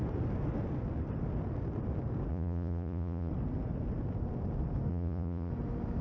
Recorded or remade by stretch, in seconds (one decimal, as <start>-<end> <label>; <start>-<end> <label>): 0.0-2.3 recorded; 2.3-3.3 remade; 3.3-4.9 recorded; 4.9-5.5 remade; 5.5-6.0 recorded